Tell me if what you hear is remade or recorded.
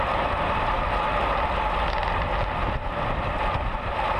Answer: recorded